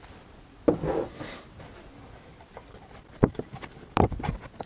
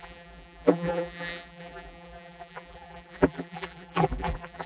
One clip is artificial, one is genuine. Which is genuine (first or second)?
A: first